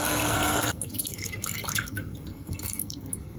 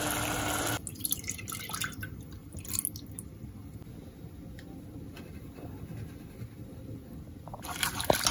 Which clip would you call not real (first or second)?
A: first